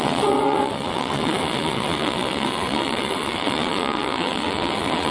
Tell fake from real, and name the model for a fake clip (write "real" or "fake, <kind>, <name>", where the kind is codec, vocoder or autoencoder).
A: fake, vocoder, WaveNeXt